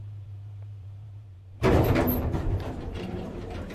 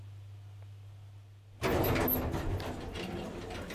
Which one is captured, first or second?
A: second